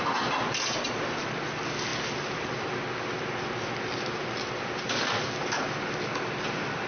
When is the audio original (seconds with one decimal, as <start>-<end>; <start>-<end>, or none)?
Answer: 0.0-6.9